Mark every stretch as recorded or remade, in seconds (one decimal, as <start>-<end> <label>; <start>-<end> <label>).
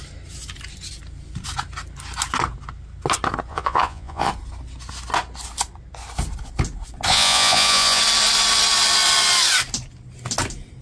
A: 0.0-3.5 recorded; 3.5-4.3 remade; 4.3-7.1 recorded; 7.1-8.0 remade; 8.0-10.8 recorded